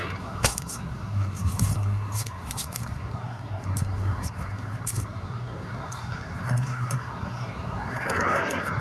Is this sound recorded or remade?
remade